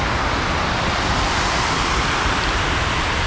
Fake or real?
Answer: fake